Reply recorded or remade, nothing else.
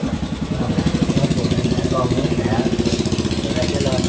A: recorded